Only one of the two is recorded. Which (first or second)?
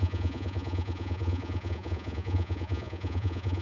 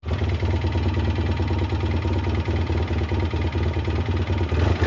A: second